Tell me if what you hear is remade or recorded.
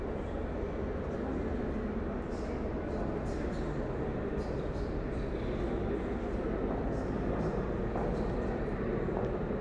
recorded